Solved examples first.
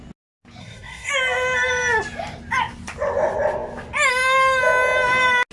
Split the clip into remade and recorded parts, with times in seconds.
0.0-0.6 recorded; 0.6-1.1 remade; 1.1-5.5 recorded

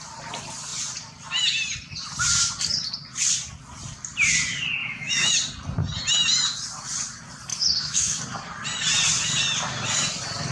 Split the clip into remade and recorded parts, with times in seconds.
0.0-4.8 recorded; 4.8-5.3 remade; 5.3-7.5 recorded; 7.5-8.2 remade; 8.2-10.5 recorded

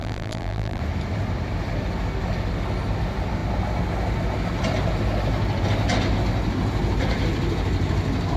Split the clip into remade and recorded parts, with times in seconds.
0.0-0.8 remade; 0.8-8.4 recorded

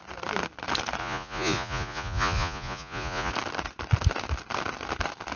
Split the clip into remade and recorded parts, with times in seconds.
0.0-1.0 recorded; 1.0-3.3 remade; 3.3-5.4 recorded

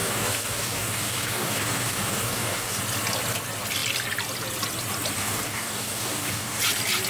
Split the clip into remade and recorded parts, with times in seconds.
0.0-2.8 remade; 2.8-5.2 recorded; 5.2-6.6 remade; 6.6-7.1 recorded

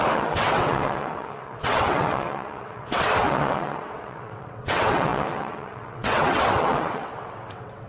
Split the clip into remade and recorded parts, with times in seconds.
0.0-7.9 remade

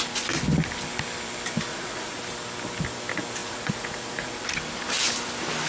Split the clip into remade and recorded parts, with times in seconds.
0.0-1.7 recorded; 1.7-2.2 remade; 2.2-3.4 recorded; 3.4-4.4 remade; 4.4-5.7 recorded

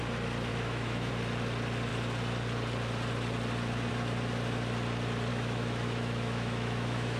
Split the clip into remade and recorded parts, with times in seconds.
0.0-0.5 recorded; 0.5-1.1 remade; 1.1-5.3 recorded; 5.3-7.2 remade